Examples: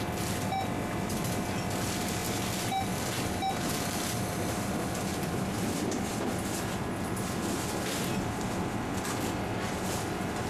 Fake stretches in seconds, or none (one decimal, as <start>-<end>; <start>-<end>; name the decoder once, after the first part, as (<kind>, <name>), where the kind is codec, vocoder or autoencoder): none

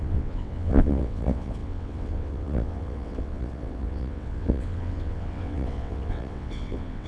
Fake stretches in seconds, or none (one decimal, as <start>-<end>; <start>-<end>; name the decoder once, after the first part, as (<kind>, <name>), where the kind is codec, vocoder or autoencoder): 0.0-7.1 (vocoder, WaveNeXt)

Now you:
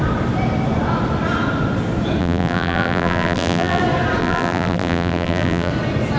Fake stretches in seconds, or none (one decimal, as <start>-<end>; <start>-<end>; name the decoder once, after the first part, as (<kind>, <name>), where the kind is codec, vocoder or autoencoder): 2.2-3.8 (vocoder, BigVGAN v2); 4.2-5.7

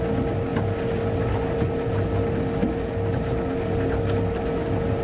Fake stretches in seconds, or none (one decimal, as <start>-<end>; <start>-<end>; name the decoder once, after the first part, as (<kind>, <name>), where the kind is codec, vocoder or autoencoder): none

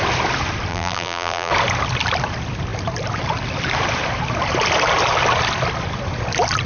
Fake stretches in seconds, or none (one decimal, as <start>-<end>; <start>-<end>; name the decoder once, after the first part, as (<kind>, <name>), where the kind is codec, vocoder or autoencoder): 0.7-1.5 (vocoder, BigVGAN v2)